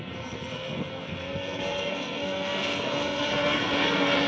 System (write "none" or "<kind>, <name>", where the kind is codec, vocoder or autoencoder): codec, SNAC